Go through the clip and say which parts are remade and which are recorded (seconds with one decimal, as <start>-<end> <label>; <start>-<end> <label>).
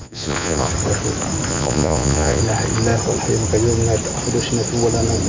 0.0-0.7 remade; 0.7-1.5 recorded; 1.5-2.4 remade; 2.4-5.3 recorded